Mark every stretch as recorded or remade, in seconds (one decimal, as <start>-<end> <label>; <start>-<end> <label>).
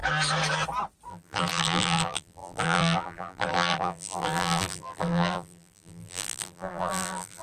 0.0-1.1 recorded; 1.1-7.4 remade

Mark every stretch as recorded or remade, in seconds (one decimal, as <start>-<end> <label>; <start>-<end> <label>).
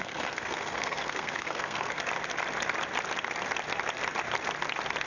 0.0-2.0 remade; 2.0-5.1 recorded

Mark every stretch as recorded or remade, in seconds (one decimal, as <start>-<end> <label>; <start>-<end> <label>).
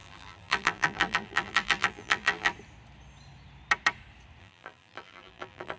0.0-2.5 remade; 2.5-4.4 recorded; 4.4-5.8 remade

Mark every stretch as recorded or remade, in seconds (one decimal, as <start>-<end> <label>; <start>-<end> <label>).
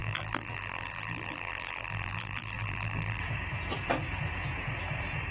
0.0-3.2 remade; 3.2-5.3 recorded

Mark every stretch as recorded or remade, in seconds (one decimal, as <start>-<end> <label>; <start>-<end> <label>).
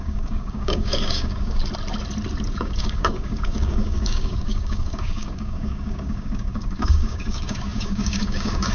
0.0-1.6 remade; 1.6-2.5 recorded; 2.5-8.7 remade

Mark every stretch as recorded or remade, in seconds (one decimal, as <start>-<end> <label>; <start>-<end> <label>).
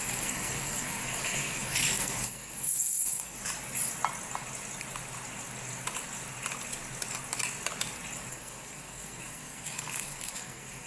0.0-3.4 remade; 3.4-8.3 recorded; 8.3-10.9 remade